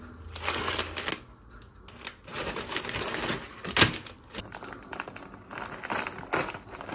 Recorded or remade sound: recorded